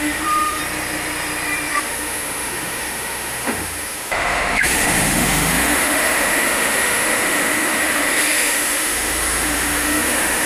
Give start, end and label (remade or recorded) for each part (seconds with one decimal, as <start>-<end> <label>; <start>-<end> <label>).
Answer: 0.0-0.6 remade; 0.6-1.7 recorded; 1.7-10.5 remade